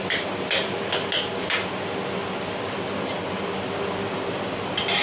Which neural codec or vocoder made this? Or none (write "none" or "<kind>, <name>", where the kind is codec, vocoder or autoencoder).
none